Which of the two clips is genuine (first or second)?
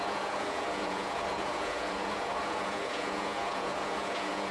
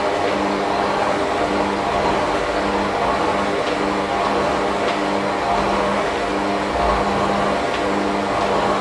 second